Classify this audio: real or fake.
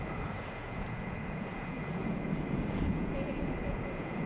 fake